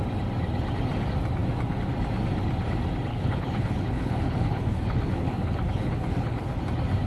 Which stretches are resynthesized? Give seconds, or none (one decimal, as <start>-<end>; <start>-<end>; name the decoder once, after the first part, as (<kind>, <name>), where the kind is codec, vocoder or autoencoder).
3.1-6.6 (codec, HILCodec)